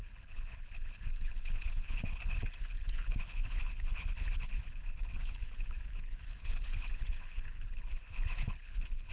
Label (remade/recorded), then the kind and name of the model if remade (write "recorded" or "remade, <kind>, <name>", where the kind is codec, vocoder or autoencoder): remade, codec, HILCodec